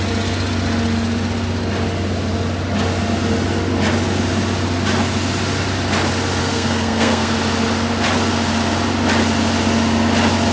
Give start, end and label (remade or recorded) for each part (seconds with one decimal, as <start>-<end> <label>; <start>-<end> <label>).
0.0-6.4 recorded; 6.4-7.3 remade; 7.3-10.5 recorded